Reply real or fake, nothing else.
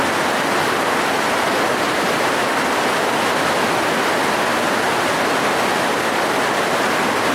real